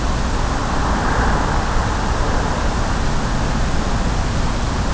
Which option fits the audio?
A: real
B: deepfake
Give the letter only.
A